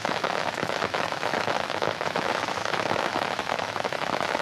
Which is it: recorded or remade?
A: remade